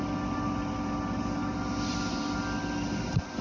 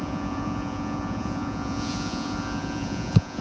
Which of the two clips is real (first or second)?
first